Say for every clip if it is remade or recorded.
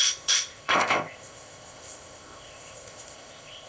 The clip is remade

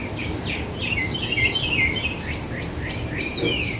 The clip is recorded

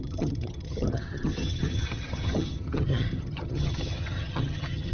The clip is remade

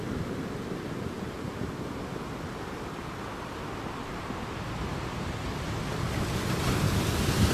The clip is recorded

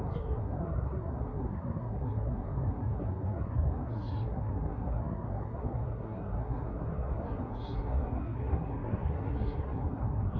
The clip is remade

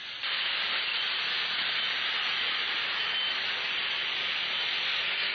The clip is recorded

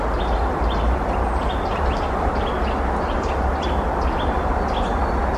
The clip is recorded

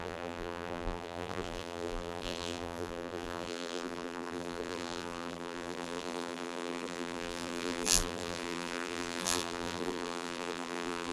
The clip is remade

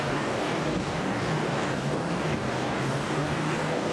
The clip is remade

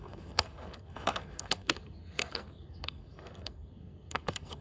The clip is remade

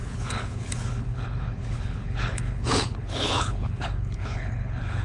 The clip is remade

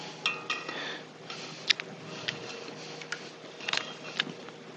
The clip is recorded